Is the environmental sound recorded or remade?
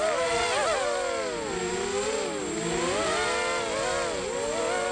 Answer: recorded